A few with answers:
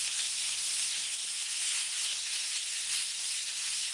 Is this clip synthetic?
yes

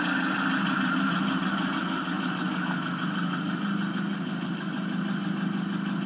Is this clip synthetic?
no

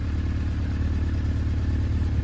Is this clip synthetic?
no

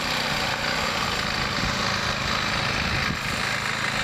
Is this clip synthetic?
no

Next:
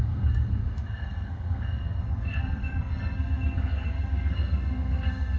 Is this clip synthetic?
yes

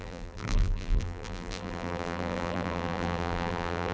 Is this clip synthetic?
yes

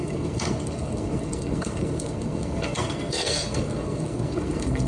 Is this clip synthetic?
yes